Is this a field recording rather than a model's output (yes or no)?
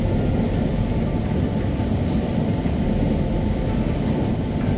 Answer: yes